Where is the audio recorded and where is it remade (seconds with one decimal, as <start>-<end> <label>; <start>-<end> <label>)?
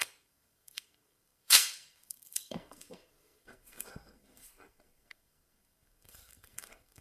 0.0-7.0 remade